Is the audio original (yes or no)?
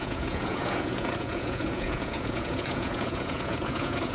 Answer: no